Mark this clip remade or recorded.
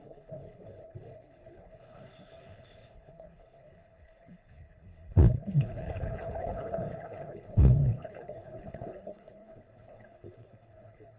remade